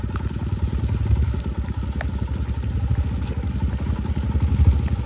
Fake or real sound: real